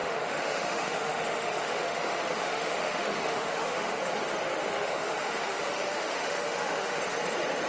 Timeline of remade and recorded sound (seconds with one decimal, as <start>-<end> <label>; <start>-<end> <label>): 0.0-4.0 remade; 4.0-4.5 recorded; 4.5-7.0 remade; 7.0-7.7 recorded